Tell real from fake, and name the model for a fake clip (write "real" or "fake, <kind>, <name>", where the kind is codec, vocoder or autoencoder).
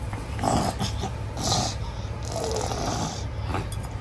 real